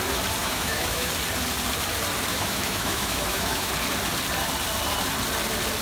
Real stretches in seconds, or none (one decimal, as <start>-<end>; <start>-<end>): 0.0-0.4; 1.1-2.3; 3.7-5.8